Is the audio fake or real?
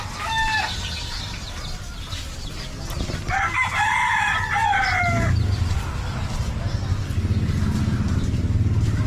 real